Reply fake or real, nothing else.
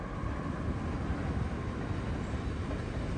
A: real